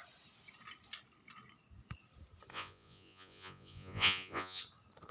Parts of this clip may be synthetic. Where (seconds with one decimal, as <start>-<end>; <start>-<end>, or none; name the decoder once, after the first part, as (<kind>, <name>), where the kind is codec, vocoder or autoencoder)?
2.5-4.6 (vocoder, Vocos)